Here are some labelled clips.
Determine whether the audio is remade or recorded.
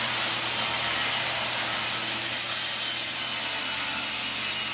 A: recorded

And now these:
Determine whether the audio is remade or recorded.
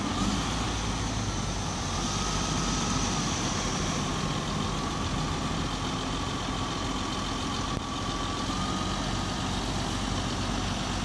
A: recorded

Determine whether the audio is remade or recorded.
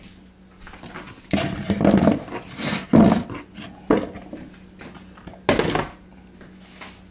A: recorded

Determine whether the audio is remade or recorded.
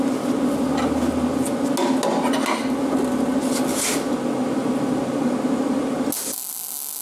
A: recorded